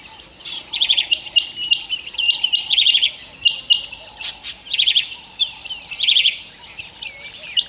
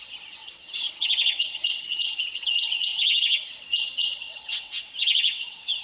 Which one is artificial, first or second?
second